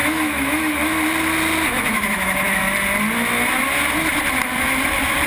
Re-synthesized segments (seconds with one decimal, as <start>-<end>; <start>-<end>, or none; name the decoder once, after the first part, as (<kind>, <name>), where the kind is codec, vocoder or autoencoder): 0.0-0.9 (autoencoder, DAC-VAE); 1.7-2.6